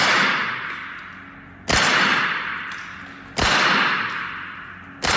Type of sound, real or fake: real